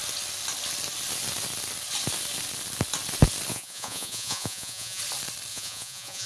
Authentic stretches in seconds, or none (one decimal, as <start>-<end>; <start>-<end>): 0.0-3.5; 5.0-5.5